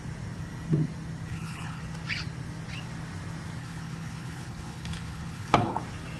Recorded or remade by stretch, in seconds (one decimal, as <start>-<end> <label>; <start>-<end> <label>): 0.0-1.3 recorded; 1.3-1.8 remade; 1.8-3.6 recorded; 3.6-5.8 remade; 5.8-6.2 recorded